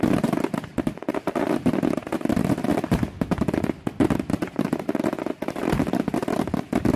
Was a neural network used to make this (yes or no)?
yes